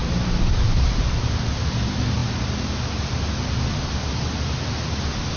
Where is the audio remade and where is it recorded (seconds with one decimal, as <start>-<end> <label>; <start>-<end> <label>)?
0.0-1.1 remade; 1.1-5.4 recorded